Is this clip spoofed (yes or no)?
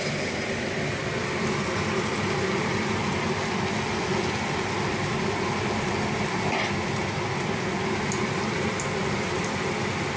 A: no